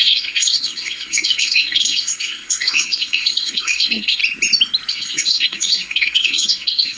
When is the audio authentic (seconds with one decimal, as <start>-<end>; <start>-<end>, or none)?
4.2-4.9